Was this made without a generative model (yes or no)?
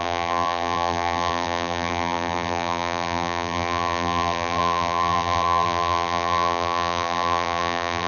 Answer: no